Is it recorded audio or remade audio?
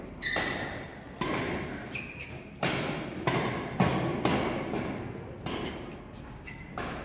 recorded